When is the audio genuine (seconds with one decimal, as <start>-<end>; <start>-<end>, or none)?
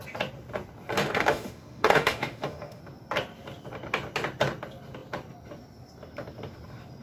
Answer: 0.0-1.0; 2.8-7.0